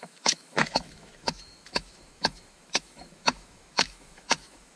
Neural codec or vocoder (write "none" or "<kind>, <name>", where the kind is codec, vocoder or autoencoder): autoencoder, DAC-VAE